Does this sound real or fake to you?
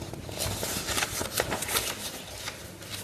real